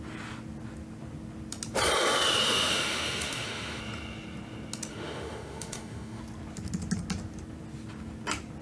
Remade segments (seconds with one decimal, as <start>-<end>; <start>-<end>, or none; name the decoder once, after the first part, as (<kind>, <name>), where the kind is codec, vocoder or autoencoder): 2.4-3.8 (autoencoder, DAC-VAE); 4.9-6.2